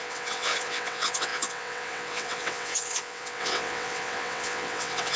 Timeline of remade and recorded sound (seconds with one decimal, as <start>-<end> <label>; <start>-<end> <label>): 0.0-5.2 remade